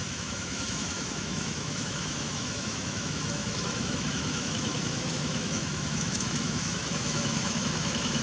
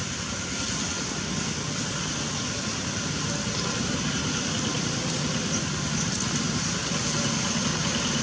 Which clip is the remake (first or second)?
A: first